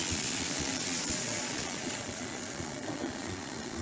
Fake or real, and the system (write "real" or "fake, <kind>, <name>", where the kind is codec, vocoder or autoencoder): fake, vocoder, Vocos